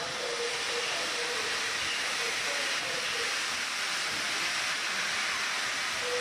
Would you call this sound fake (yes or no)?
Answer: no